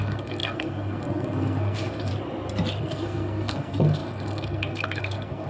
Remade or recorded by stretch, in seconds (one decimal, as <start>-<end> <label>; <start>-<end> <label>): 0.0-2.1 remade; 2.1-2.8 recorded; 2.8-5.5 remade